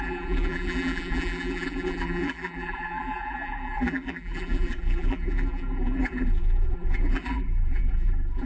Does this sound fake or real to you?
fake